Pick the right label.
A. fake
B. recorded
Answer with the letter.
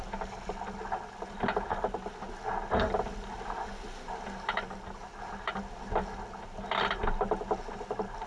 B